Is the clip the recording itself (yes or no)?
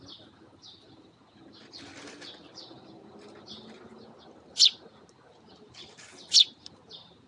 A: yes